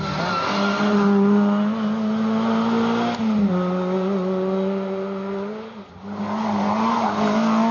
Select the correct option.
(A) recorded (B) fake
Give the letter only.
A